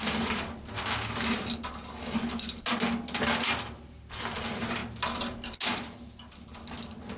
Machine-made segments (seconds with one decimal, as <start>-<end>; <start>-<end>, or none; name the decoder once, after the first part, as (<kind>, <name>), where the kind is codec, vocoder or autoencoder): none